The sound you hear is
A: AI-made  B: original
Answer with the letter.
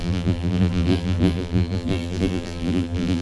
A